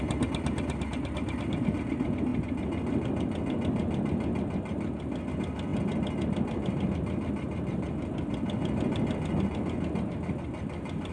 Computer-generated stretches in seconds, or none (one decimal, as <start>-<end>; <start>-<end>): none